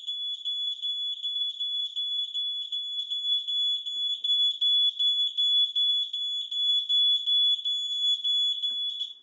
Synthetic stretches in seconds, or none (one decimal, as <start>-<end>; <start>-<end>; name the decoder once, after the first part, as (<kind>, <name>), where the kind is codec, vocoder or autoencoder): none